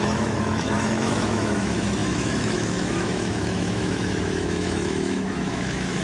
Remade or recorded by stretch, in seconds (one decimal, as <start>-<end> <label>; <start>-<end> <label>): 0.0-6.0 remade